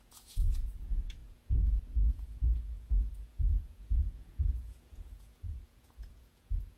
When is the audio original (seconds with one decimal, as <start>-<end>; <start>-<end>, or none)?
none